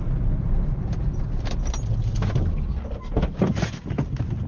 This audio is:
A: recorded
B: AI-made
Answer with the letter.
A